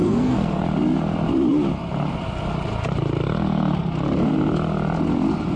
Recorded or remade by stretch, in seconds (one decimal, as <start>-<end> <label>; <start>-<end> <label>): 0.0-0.6 remade; 0.6-5.6 recorded